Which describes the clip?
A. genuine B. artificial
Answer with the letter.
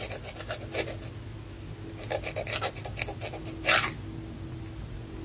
A